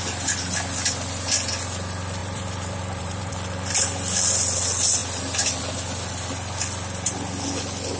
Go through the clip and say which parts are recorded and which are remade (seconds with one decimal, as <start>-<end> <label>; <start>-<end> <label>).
0.0-2.2 recorded; 2.2-3.3 remade; 3.3-8.0 recorded